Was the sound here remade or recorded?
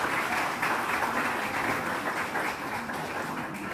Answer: recorded